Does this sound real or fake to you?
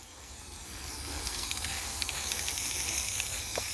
fake